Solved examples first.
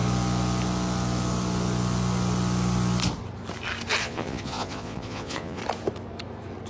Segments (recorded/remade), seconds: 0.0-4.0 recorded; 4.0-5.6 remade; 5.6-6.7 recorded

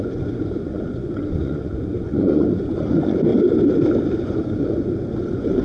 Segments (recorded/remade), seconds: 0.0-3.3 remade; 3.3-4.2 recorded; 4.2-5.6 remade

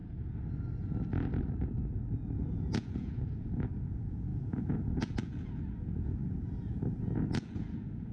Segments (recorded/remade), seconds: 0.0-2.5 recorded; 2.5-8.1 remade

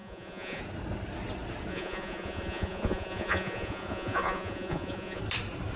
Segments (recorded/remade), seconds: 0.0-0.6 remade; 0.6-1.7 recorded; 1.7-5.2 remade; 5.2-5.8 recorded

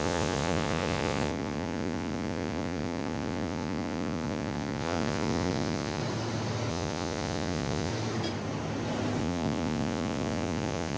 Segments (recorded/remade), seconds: 0.0-6.0 remade; 6.0-6.7 recorded; 6.7-7.9 remade; 7.9-9.2 recorded; 9.2-11.0 remade

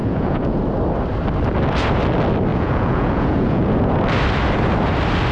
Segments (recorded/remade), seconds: 0.0-0.6 remade; 0.6-2.5 recorded; 2.5-4.0 remade; 4.0-5.3 recorded

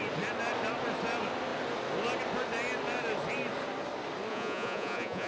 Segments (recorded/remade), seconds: 0.0-4.3 recorded; 4.3-5.3 remade